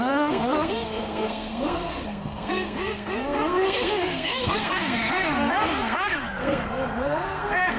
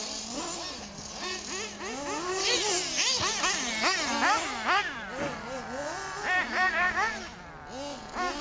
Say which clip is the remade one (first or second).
first